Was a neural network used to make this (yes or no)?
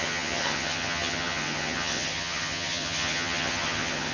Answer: yes